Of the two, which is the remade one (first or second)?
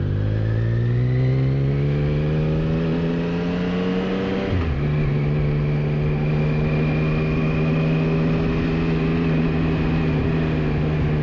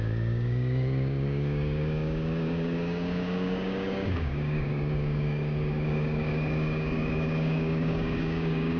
second